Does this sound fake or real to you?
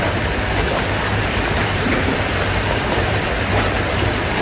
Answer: fake